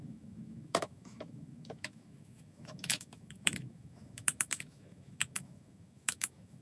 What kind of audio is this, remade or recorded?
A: remade